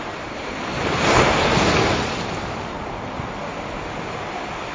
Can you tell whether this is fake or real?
real